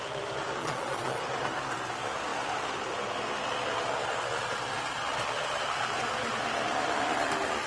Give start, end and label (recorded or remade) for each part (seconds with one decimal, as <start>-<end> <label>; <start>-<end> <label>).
0.0-0.6 recorded; 0.6-1.2 remade; 1.2-7.7 recorded